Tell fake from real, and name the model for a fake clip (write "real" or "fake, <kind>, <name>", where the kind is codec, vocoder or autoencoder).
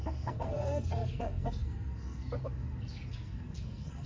fake, codec, SNAC